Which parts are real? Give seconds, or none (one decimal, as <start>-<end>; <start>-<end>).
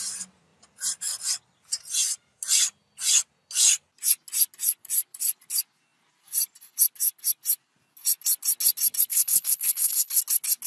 0.0-9.1; 10.2-10.7